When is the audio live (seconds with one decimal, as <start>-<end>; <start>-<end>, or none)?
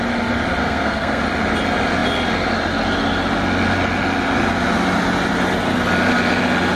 0.0-0.6; 1.2-6.8